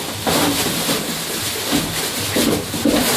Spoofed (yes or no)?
no